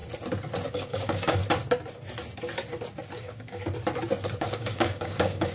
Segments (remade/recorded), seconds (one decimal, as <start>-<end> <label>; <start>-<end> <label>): 0.0-0.7 recorded; 0.7-1.4 remade; 1.4-3.2 recorded; 3.2-3.6 remade; 3.6-4.4 recorded; 4.4-5.5 remade